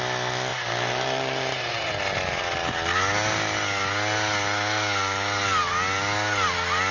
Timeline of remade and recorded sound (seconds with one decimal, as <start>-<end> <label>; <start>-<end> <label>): 0.0-0.5 recorded; 0.5-1.9 remade; 1.9-6.9 recorded